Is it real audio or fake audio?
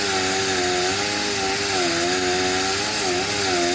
real